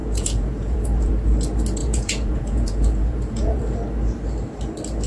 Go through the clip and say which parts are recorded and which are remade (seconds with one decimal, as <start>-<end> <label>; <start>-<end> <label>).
0.0-1.1 remade; 1.1-1.8 recorded; 1.8-3.6 remade; 3.6-5.1 recorded